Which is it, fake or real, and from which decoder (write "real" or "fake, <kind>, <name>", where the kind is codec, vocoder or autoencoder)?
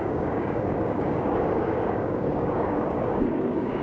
fake, codec, DAC